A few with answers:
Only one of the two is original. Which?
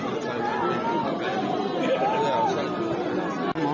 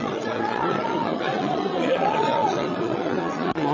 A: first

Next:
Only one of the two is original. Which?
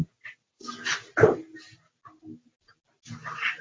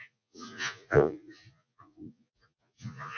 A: first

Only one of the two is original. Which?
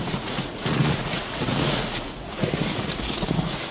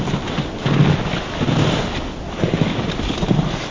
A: second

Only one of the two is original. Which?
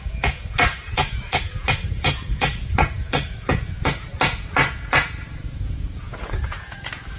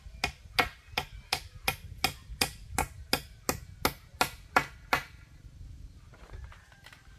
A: second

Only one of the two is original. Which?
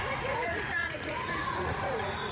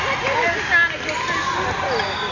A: second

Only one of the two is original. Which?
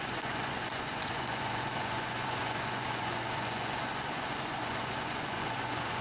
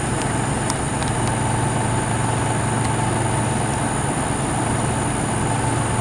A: second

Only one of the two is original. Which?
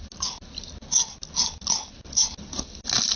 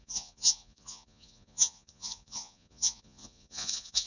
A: first